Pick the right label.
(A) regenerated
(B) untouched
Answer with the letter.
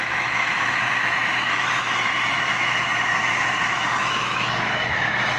A